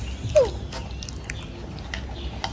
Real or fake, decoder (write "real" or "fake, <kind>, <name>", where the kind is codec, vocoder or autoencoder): real